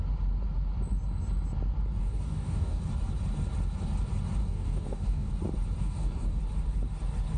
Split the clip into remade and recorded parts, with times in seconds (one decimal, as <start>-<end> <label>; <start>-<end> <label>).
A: 0.0-2.0 recorded; 2.0-2.8 remade; 2.8-4.4 recorded; 4.4-5.3 remade; 5.3-5.8 recorded; 5.8-6.4 remade; 6.4-7.4 recorded